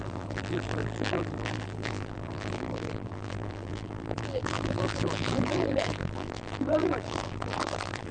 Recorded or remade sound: remade